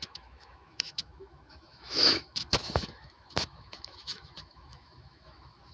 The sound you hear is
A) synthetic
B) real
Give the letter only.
A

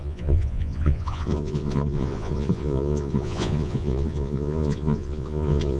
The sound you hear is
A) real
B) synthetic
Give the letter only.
B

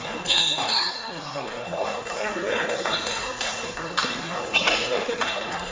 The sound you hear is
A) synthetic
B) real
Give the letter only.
A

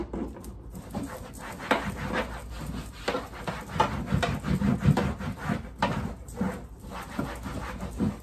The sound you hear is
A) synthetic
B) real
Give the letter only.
B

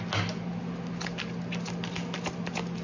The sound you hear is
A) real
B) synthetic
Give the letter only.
A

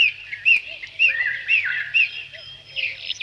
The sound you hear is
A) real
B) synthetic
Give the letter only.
A